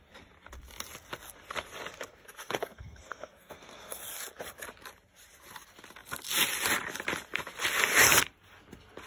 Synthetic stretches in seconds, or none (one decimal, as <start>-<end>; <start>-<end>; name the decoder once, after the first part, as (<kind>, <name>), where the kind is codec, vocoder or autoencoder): 2.1-4.0 (codec, SNAC)